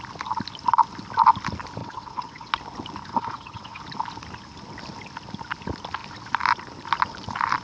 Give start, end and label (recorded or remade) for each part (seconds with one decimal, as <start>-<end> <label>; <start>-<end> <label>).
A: 0.0-1.8 recorded; 1.8-2.5 remade; 2.5-3.1 recorded; 3.1-3.8 remade; 3.8-7.6 recorded